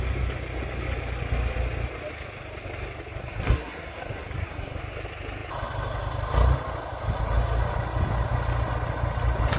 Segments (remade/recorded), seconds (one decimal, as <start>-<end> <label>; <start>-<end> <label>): 0.0-3.2 recorded; 3.2-4.8 remade; 4.8-9.6 recorded